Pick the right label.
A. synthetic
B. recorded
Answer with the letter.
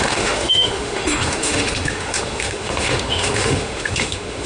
A